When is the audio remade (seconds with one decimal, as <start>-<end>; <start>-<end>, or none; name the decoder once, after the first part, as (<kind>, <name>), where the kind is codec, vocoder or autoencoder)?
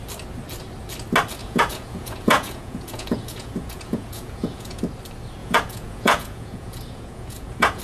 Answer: 1.4-4.8 (vocoder, Vocos); 5.4-7.8